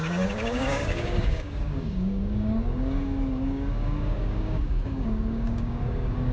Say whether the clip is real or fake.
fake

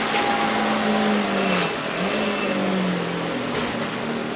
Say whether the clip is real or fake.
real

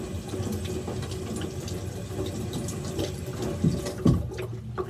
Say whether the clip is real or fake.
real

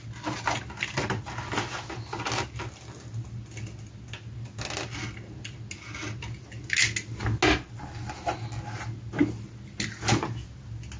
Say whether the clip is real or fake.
real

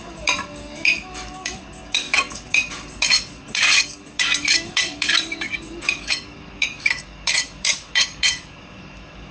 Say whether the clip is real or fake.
fake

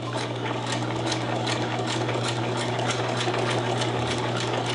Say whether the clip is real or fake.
fake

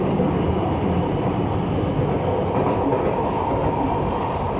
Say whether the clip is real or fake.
real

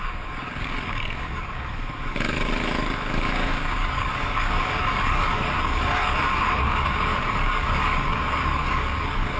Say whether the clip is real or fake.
fake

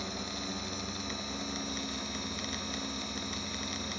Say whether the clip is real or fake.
real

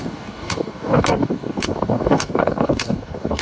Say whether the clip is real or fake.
fake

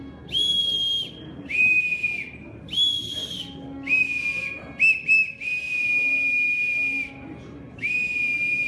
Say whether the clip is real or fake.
real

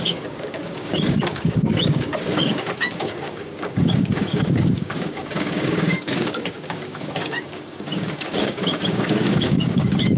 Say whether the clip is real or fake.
fake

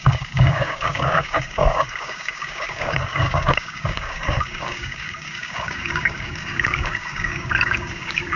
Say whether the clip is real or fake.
fake